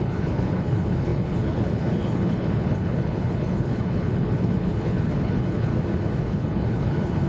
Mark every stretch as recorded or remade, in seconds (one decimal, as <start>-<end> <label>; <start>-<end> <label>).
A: 0.0-5.7 remade; 5.7-6.2 recorded; 6.2-7.3 remade